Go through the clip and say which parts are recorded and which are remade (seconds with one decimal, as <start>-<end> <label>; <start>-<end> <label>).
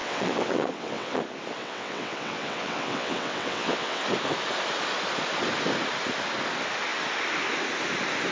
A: 0.0-1.2 remade; 1.2-1.6 recorded; 1.6-4.0 remade; 4.0-8.3 recorded